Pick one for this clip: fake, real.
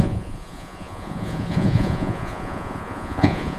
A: fake